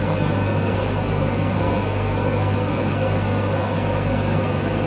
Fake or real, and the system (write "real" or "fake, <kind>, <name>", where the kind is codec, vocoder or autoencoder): fake, codec, SNAC